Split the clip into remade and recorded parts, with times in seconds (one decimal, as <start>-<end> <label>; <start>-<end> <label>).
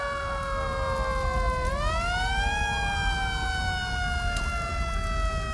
0.0-5.5 recorded